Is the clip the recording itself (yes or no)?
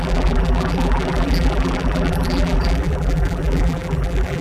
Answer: no